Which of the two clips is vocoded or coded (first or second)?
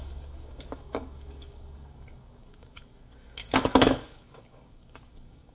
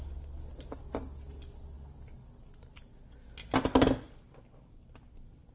first